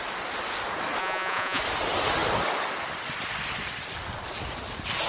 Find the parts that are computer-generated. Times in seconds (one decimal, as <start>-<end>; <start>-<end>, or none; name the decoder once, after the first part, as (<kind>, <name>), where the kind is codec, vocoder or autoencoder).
1.0-1.6 (vocoder, Vocos)